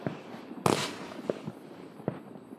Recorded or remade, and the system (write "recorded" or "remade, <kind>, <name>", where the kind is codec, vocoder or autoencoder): recorded